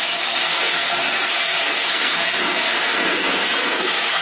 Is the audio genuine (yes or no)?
no